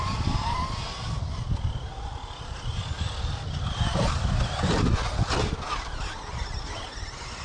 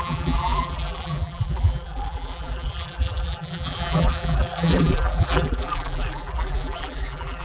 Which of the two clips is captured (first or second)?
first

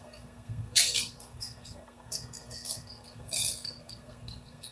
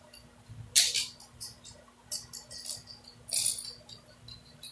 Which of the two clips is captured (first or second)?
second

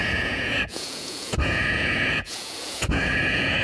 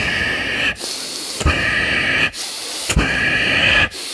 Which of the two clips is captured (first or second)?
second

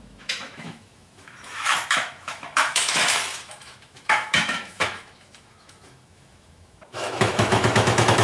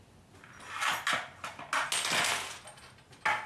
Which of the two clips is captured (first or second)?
second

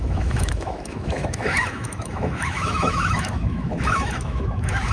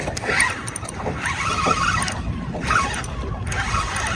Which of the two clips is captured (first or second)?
second